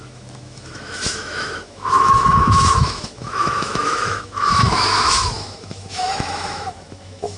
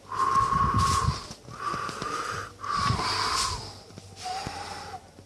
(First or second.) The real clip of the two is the second